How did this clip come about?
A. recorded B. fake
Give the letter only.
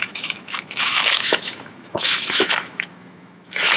B